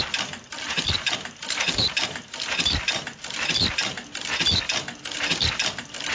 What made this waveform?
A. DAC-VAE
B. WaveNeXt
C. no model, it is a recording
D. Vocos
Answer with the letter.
C